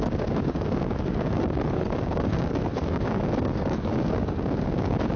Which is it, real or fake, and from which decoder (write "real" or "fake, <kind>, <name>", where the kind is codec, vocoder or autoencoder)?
fake, codec, DAC